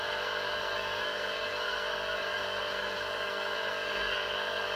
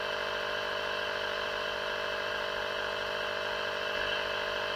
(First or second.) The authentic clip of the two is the second